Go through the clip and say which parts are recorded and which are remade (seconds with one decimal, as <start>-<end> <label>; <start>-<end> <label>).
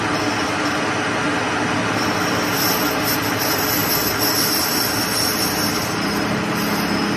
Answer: 0.0-7.2 recorded